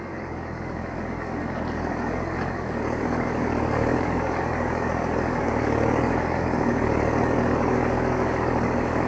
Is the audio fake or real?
fake